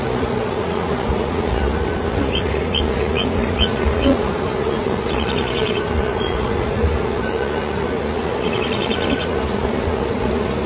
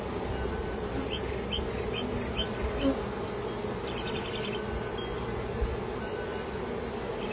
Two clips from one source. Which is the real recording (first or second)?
second